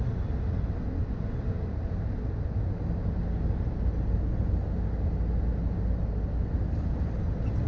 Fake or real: real